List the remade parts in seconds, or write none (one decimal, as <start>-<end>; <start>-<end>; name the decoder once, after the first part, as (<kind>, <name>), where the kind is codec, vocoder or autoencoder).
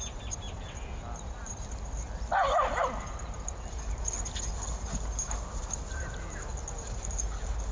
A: none